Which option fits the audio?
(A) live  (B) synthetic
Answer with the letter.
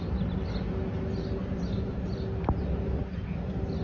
A